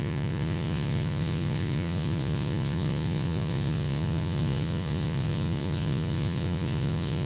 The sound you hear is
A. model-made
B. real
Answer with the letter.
A